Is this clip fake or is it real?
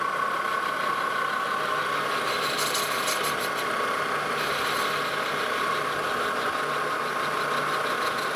real